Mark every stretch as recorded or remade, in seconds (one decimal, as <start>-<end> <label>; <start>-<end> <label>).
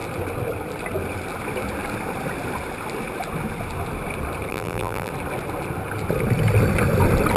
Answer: 0.0-4.5 recorded; 4.5-5.1 remade; 5.1-7.4 recorded